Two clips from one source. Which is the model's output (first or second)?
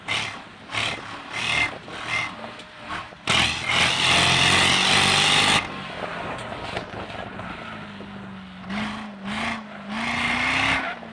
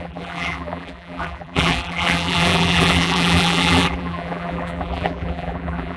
second